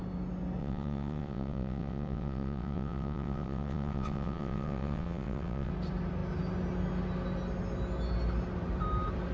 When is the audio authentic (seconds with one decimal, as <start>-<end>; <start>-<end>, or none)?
0.0-0.6; 5.7-9.3